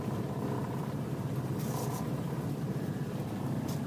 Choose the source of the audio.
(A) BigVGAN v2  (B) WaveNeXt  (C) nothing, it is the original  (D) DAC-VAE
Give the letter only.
C